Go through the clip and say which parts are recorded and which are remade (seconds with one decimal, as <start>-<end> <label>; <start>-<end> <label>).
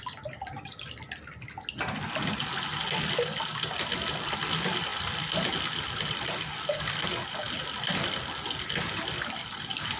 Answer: 0.0-10.0 recorded